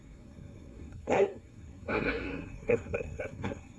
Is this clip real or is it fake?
fake